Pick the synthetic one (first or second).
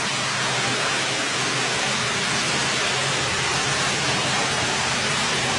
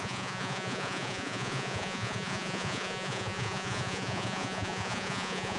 second